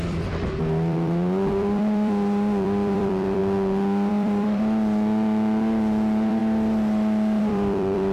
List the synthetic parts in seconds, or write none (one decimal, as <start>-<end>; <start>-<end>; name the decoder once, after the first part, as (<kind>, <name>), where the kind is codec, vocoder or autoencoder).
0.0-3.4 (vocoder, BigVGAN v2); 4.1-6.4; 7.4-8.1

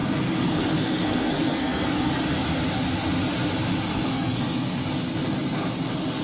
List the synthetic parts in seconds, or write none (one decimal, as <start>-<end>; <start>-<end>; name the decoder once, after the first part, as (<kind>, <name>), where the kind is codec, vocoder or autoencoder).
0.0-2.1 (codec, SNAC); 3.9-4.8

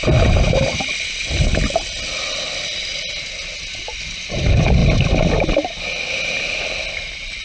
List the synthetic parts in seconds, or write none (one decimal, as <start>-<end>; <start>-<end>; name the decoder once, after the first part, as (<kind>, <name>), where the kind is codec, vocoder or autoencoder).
0.0-1.5 (vocoder, BigVGAN v2); 3.8-4.8; 6.1-7.4

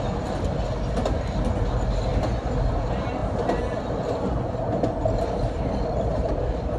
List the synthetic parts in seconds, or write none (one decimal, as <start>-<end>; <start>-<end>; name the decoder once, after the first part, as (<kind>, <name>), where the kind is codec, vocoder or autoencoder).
none